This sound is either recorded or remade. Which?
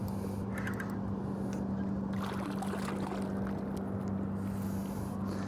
recorded